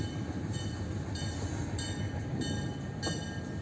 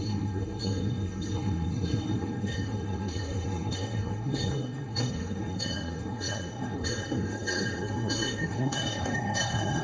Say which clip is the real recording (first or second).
first